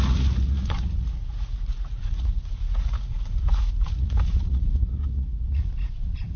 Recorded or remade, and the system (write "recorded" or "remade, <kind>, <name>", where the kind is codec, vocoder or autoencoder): remade, vocoder, Vocos